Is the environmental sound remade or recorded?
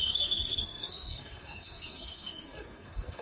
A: remade